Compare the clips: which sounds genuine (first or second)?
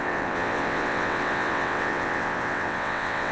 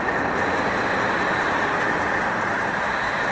second